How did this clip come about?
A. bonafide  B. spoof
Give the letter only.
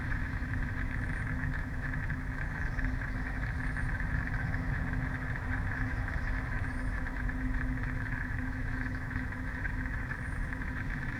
B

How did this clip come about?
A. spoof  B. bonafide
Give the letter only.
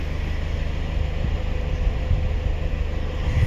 B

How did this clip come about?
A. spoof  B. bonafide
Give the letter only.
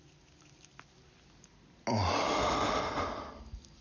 B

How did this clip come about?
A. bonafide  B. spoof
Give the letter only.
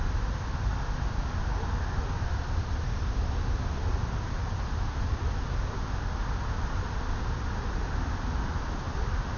A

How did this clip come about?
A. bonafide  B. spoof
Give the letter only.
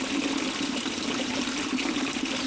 A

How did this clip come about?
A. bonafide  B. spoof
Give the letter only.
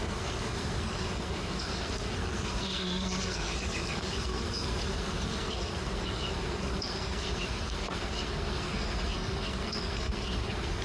B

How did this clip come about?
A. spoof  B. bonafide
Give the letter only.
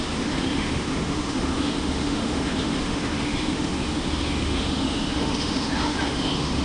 A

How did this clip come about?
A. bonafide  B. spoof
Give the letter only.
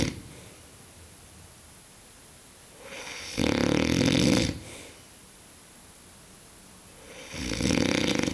A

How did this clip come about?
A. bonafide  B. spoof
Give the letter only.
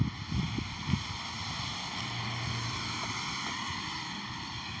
A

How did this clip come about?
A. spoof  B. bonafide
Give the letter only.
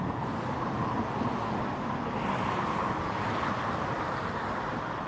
B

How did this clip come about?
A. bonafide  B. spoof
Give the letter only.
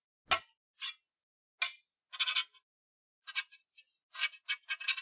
A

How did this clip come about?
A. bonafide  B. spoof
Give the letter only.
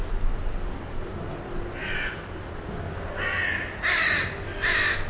A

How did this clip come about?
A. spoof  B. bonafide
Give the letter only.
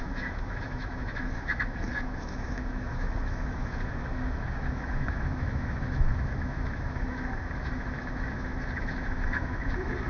A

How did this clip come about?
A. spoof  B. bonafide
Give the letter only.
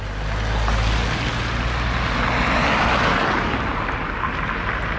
B